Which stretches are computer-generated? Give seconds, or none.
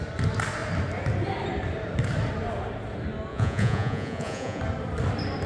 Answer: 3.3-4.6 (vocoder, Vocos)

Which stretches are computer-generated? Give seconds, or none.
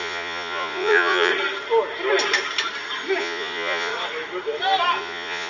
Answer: 0.0-1.3 (vocoder, Vocos); 3.2-3.9; 5.0-5.5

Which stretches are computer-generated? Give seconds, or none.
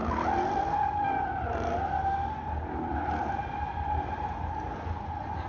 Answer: none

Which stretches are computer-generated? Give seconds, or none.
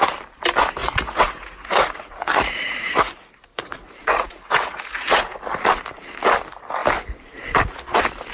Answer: 0.8-3.1 (vocoder, Vocos); 3.5-5.4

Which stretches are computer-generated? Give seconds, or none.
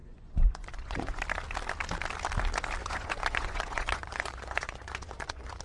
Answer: 0.0-1.2 (vocoder, Vocos); 2.8-5.6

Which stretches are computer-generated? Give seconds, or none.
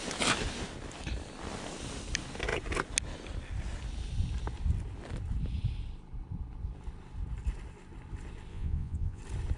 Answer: 8.5-9.2 (vocoder, Vocos)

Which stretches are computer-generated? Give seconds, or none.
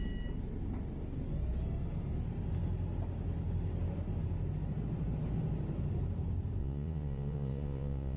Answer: 6.6-8.2 (vocoder, Vocos)